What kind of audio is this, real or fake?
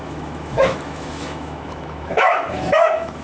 fake